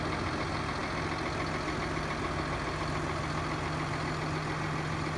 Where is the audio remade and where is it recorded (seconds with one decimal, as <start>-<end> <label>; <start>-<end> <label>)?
0.0-5.2 recorded